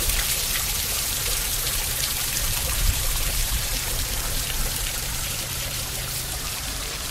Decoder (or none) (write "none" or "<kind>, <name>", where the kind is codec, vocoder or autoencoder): vocoder, BigVGAN v2